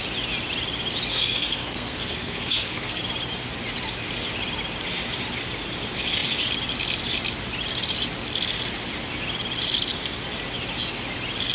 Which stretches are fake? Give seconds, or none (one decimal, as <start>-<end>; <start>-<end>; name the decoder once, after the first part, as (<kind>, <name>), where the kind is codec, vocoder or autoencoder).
1.1-3.0 (codec, SNAC)